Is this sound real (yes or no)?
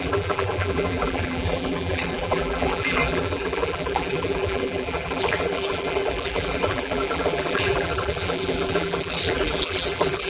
no